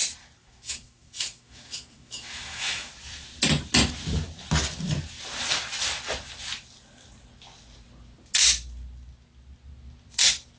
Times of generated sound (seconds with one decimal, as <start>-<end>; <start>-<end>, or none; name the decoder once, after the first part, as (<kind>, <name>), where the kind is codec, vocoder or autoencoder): 0.4-2.9 (autoencoder, DAC-VAE)